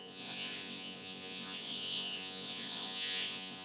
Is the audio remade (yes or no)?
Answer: yes